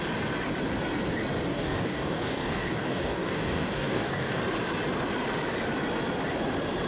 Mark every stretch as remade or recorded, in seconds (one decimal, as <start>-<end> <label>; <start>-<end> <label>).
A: 0.0-1.5 recorded; 1.5-4.4 remade; 4.4-6.9 recorded

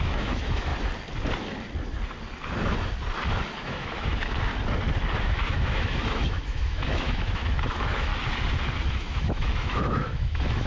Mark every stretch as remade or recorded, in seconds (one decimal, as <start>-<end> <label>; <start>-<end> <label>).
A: 0.0-0.7 remade; 0.7-3.6 recorded; 3.6-4.5 remade; 4.5-5.2 recorded; 5.2-8.1 remade; 8.1-8.9 recorded; 8.9-10.7 remade